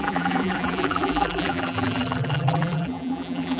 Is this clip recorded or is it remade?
remade